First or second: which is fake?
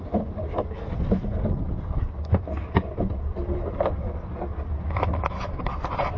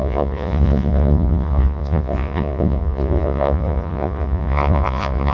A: second